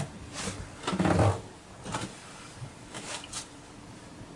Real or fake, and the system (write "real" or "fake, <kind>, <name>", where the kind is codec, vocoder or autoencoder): real